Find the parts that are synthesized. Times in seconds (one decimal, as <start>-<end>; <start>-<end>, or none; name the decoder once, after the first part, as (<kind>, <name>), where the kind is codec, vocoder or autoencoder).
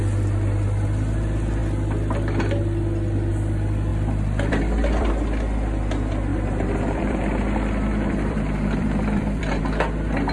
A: 3.9-5.1 (vocoder, BigVGAN v2); 6.3-9.6